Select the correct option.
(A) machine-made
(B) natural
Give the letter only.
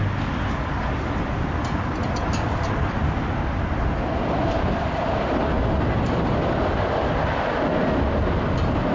B